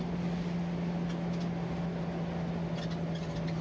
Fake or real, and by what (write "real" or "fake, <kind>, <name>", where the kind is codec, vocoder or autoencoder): real